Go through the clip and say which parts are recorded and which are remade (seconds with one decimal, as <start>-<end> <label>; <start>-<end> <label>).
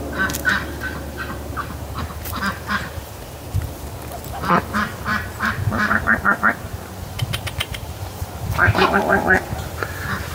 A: 0.0-0.5 recorded; 0.5-3.0 remade; 3.0-5.1 recorded; 5.1-10.3 remade